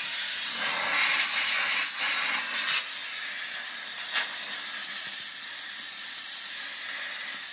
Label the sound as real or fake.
real